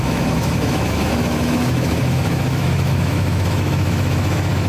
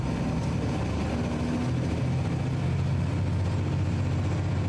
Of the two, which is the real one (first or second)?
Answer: second